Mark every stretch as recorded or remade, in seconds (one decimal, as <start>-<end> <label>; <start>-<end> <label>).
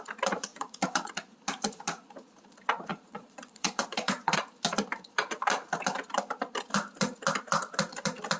0.0-0.5 recorded; 0.5-1.1 remade; 1.1-2.9 recorded; 2.9-4.4 remade; 4.4-8.4 recorded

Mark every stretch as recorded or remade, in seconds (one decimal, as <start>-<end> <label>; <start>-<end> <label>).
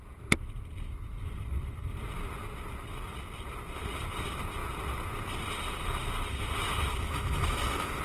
0.0-6.9 recorded; 6.9-8.0 remade